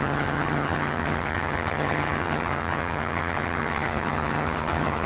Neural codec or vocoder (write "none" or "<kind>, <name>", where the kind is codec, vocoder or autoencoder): vocoder, HiFi-GAN